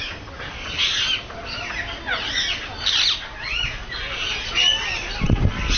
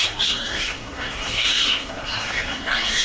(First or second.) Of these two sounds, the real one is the first